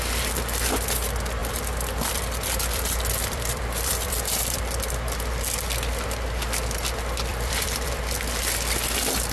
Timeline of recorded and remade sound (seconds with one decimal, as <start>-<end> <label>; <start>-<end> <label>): 0.0-1.4 recorded; 1.4-4.6 remade; 4.6-7.3 recorded; 7.3-8.0 remade; 8.0-9.3 recorded